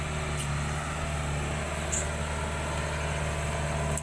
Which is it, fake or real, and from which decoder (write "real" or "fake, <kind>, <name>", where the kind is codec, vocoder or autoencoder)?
real